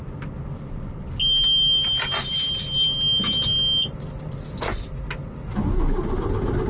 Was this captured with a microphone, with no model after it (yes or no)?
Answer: yes